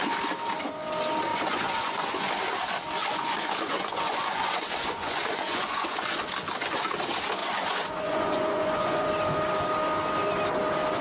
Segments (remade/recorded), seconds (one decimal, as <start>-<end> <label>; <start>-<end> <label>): 0.0-1.3 recorded; 1.3-2.3 remade; 2.3-3.0 recorded; 3.0-6.2 remade; 6.2-7.4 recorded; 7.4-9.1 remade; 9.1-11.0 recorded